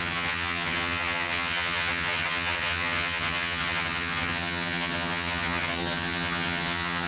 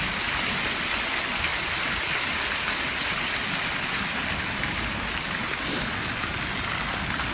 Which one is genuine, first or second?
second